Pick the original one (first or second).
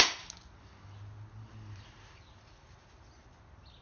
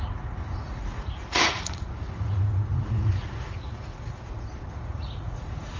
first